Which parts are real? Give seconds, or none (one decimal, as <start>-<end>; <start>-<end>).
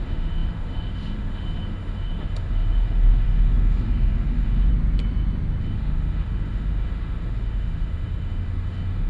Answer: 4.7-5.6